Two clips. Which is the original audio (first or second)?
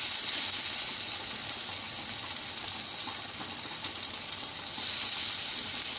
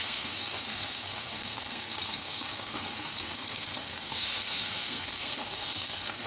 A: first